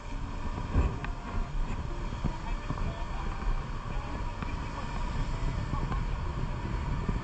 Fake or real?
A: real